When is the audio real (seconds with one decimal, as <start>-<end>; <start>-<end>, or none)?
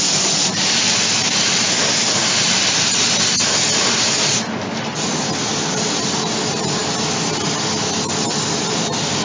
0.0-9.2